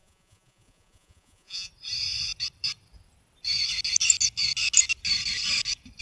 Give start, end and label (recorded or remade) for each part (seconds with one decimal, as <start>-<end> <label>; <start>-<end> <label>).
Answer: 0.0-1.7 remade; 1.7-6.0 recorded